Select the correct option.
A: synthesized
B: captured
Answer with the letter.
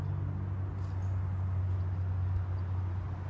B